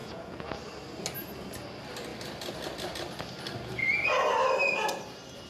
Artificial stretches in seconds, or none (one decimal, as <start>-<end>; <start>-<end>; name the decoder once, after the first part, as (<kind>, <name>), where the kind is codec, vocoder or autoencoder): 0.0-0.6 (vocoder, Vocos)